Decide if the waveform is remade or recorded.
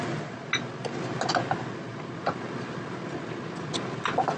recorded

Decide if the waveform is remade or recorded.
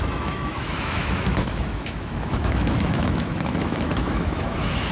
remade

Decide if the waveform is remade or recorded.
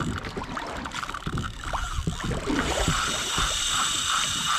remade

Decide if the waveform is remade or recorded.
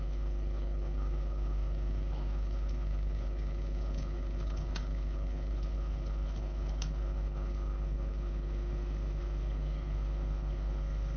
remade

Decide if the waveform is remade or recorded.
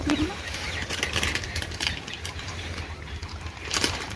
remade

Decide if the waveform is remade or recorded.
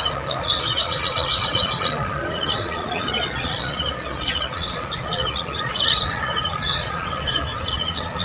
remade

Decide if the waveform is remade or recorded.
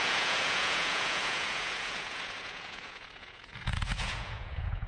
remade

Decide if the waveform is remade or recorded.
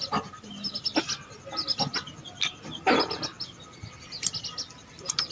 recorded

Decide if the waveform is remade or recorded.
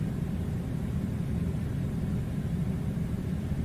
remade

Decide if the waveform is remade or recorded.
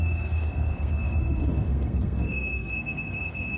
remade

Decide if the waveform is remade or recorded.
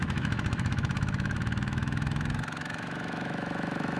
remade